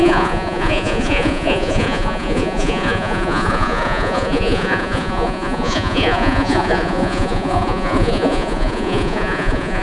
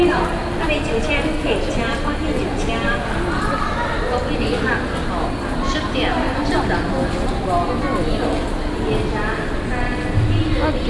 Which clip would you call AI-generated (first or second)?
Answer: first